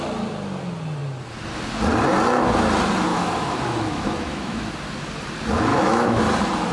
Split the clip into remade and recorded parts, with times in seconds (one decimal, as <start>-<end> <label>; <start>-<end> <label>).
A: 0.0-3.1 recorded; 3.1-4.7 remade; 4.7-5.7 recorded; 5.7-6.2 remade; 6.2-6.7 recorded